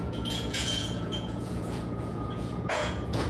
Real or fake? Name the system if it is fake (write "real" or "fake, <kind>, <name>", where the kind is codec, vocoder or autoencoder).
fake, vocoder, Vocos